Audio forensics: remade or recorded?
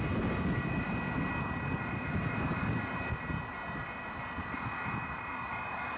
recorded